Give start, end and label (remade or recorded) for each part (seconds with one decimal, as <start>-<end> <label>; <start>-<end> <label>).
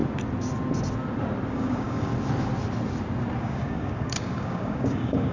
0.0-1.5 recorded; 1.5-2.1 remade; 2.1-3.4 recorded; 3.4-5.3 remade